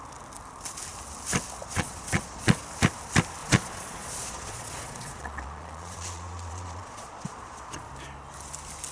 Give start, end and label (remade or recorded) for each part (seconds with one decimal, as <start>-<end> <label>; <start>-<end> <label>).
0.0-1.6 recorded; 1.6-2.6 remade; 2.6-3.4 recorded; 3.4-7.9 remade; 7.9-8.9 recorded